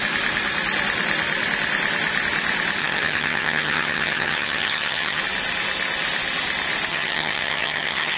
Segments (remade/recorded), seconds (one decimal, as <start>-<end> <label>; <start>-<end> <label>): 0.0-2.8 recorded; 2.8-5.2 remade; 5.2-6.9 recorded; 6.9-8.2 remade